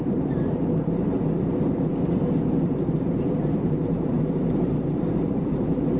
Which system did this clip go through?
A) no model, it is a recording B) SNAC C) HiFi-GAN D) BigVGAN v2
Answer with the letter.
D